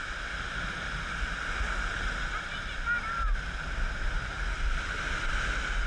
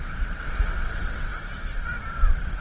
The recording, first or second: first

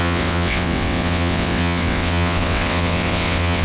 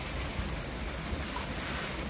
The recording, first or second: second